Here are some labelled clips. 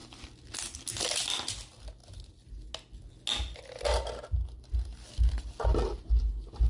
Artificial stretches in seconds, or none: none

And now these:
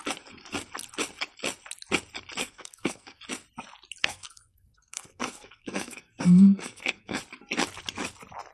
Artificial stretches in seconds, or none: 2.4-3.2; 4.0-7.2

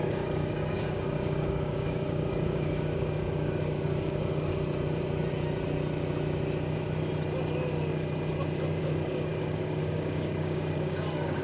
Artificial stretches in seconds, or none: 0.0-4.5; 8.8-11.4

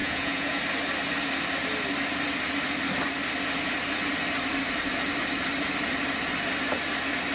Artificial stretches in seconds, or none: 0.0-0.6

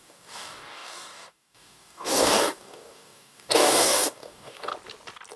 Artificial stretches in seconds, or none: 0.0-4.7

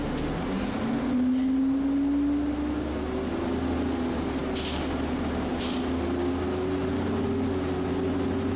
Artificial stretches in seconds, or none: none